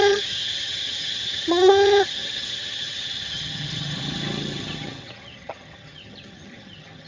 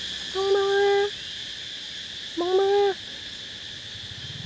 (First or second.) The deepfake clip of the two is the first